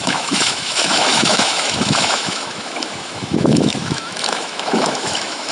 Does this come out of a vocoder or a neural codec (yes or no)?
yes